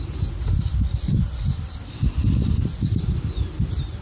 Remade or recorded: recorded